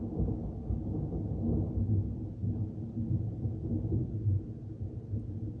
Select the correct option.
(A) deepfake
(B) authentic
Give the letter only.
B